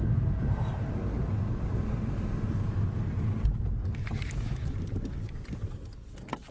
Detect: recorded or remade recorded